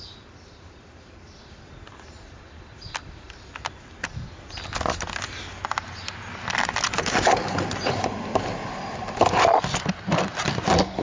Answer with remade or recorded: recorded